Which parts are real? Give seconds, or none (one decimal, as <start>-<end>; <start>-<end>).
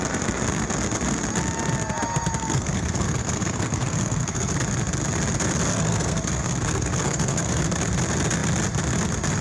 0.0-2.4; 4.5-5.7; 7.6-9.4